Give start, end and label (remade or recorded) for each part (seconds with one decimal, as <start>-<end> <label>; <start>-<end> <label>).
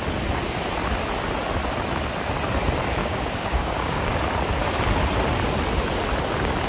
0.0-3.0 recorded; 3.0-4.1 remade; 4.1-6.7 recorded